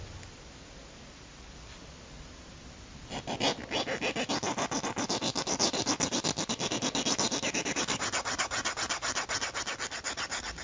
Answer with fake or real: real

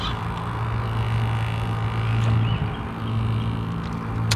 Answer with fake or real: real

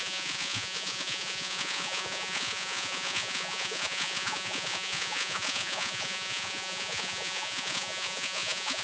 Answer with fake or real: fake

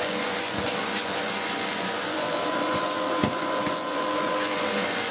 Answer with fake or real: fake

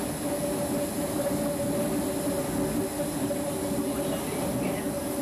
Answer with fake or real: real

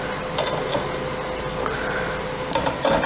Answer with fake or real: real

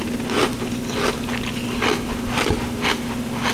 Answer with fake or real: real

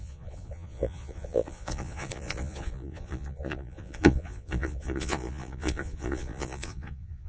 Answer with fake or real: fake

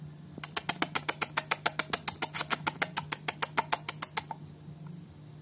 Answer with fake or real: real